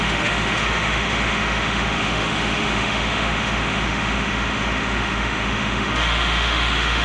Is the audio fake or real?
fake